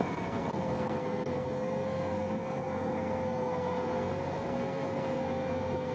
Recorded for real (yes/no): no